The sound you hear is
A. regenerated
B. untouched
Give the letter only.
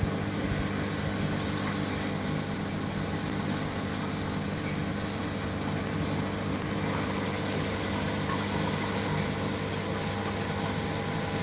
B